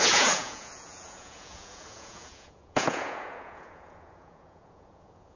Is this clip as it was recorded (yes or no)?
no